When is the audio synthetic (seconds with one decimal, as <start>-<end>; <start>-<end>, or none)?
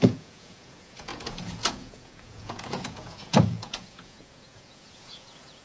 0.0-5.6